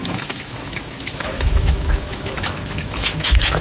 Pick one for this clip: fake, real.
fake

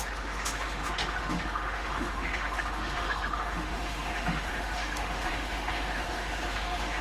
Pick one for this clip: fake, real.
fake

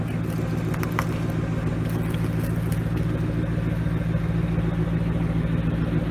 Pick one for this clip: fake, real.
real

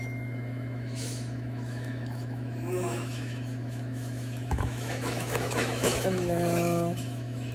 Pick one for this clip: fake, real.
fake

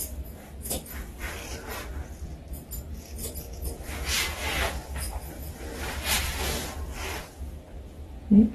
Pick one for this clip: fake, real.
real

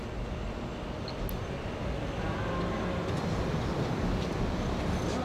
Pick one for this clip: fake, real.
real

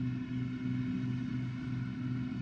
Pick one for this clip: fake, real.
real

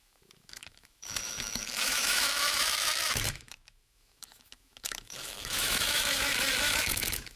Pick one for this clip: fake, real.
fake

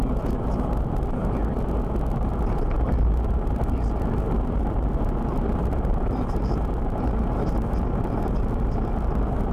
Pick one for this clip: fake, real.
real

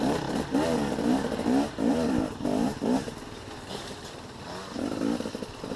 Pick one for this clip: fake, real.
real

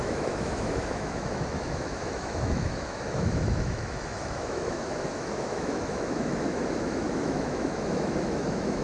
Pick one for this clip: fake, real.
fake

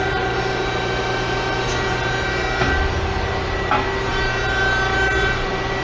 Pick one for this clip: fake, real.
real